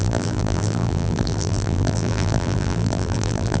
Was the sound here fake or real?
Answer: fake